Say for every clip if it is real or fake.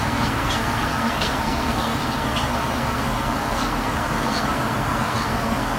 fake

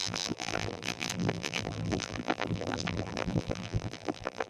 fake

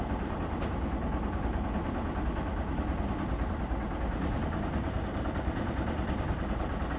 real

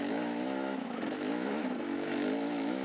fake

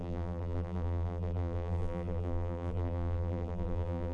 fake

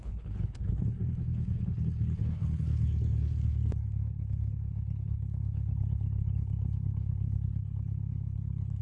fake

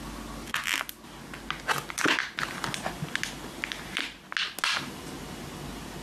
real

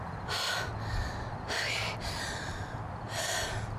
real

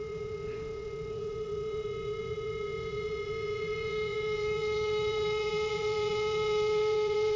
fake